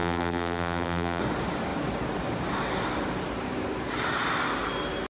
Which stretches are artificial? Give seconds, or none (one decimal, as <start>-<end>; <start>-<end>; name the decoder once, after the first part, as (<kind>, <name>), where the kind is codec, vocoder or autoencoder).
0.0-1.2 (vocoder, BigVGAN v2)